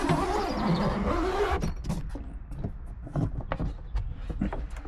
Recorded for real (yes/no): yes